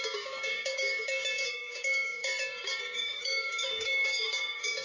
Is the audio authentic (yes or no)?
no